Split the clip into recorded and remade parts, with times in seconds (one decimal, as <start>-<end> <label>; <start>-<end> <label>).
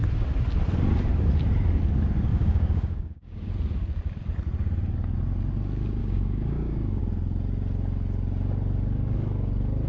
0.0-2.3 recorded; 2.3-3.5 remade; 3.5-6.0 recorded; 6.0-7.0 remade; 7.0-9.9 recorded